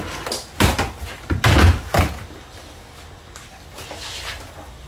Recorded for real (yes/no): yes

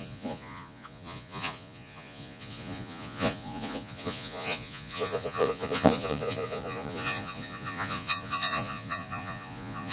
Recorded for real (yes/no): no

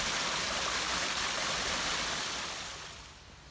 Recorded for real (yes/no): yes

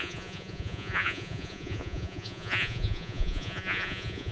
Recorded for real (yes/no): no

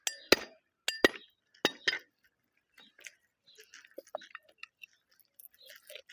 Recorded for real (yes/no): yes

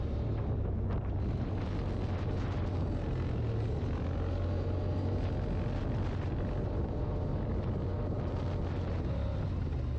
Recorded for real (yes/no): yes